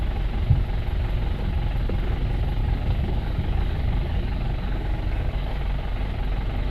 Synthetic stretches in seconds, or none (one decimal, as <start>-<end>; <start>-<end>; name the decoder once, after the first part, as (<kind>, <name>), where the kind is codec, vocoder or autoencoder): 2.6-5.6 (codec, DAC)